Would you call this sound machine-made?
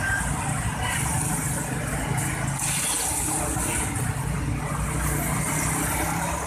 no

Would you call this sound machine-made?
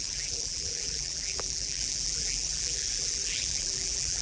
yes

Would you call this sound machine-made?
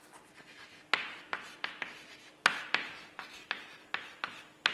no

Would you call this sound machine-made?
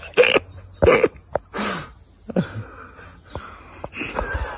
no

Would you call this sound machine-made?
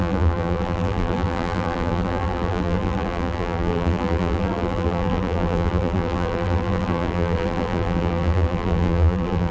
yes